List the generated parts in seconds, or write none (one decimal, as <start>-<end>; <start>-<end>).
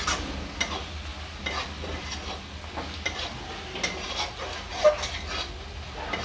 none